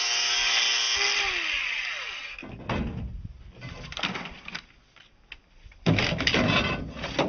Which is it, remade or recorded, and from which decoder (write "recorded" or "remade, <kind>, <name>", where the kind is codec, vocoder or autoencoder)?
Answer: recorded